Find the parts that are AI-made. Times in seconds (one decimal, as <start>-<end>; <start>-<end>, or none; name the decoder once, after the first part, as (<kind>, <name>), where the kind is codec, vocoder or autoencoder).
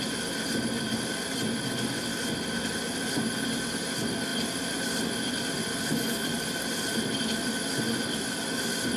4.3-7.5 (vocoder, BigVGAN v2)